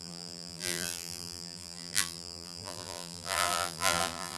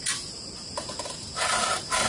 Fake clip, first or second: first